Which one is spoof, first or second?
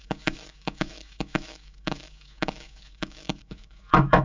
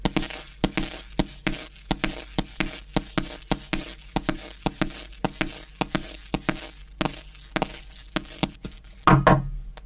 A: first